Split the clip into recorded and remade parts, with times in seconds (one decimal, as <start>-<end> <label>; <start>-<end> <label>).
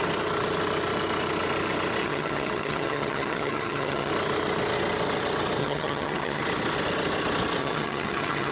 0.0-2.0 recorded; 2.0-4.1 remade; 4.1-5.6 recorded; 5.6-6.4 remade; 6.4-7.6 recorded; 7.6-8.5 remade